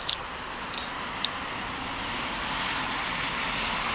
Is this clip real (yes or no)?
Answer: yes